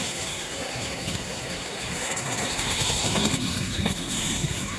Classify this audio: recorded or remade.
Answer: remade